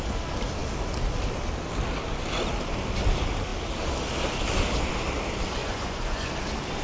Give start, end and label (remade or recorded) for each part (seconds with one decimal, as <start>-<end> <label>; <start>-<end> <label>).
0.0-5.6 recorded; 5.6-6.3 remade; 6.3-6.8 recorded